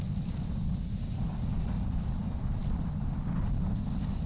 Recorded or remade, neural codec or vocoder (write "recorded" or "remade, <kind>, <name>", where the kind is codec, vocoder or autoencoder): recorded